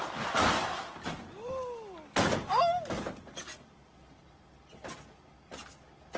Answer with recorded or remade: recorded